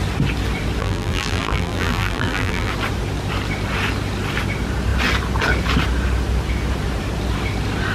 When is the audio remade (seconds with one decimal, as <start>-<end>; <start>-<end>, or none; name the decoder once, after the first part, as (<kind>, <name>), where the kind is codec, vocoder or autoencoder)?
0.8-2.7 (vocoder, BigVGAN v2)